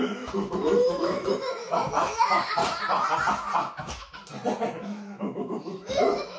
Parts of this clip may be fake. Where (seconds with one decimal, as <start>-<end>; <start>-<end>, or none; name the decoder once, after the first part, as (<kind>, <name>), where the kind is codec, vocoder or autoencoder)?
0.0-2.6 (autoencoder, DAC-VAE); 3.8-4.2; 4.8-6.4